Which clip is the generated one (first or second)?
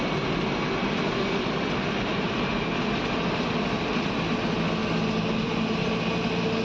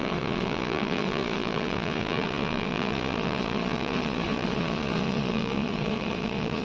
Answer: second